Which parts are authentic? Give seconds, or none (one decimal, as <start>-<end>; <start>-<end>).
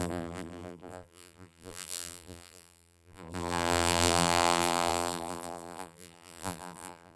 none